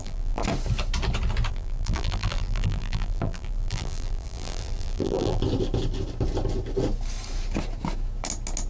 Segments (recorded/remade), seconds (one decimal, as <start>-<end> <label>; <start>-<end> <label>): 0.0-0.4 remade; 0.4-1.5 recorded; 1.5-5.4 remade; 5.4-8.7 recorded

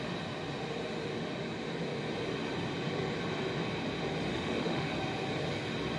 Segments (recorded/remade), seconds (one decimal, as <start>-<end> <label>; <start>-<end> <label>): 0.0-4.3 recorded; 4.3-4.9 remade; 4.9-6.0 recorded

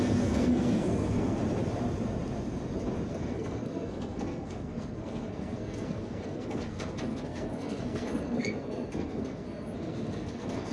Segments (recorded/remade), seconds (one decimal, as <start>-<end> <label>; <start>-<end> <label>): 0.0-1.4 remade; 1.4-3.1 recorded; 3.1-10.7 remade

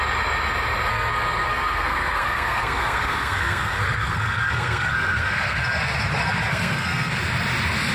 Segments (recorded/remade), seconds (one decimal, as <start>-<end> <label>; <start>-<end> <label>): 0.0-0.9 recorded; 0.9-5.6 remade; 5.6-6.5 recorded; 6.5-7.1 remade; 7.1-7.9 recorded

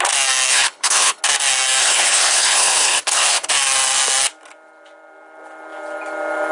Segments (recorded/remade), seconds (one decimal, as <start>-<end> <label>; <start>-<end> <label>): 0.0-0.5 recorded; 0.5-1.2 remade; 1.2-1.8 recorded; 1.8-3.5 remade; 3.5-6.5 recorded